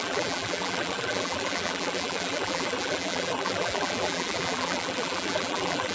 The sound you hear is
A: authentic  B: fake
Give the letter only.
B